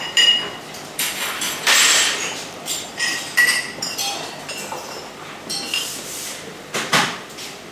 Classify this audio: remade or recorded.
remade